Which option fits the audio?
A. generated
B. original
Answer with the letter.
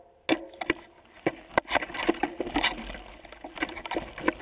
B